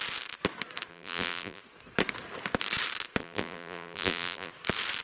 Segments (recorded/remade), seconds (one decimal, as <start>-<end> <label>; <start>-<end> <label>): 0.0-0.9 recorded; 0.9-1.6 remade; 1.6-3.2 recorded; 3.2-4.5 remade; 4.5-5.0 recorded